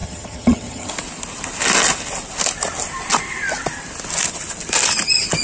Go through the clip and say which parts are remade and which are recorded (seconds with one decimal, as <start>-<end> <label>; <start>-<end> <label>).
0.0-0.9 remade; 0.9-5.4 recorded